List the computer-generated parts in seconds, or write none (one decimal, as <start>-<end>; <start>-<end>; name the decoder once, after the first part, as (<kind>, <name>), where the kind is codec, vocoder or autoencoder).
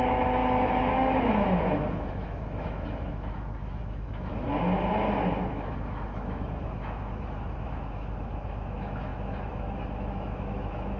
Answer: 0.0-4.3 (autoencoder, DAC-VAE); 5.5-11.0